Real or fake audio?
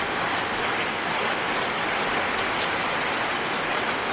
real